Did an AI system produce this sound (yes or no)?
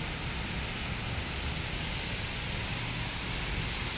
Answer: no